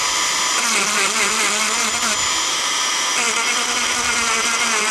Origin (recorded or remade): recorded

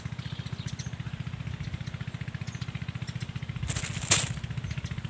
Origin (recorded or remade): recorded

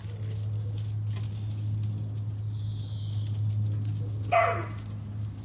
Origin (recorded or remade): recorded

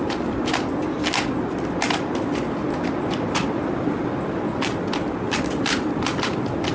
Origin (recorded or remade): recorded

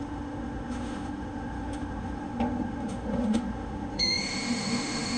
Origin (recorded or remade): remade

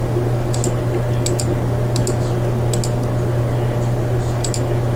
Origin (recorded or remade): recorded